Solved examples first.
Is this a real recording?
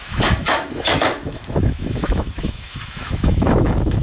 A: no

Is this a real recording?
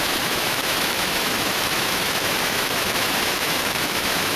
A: no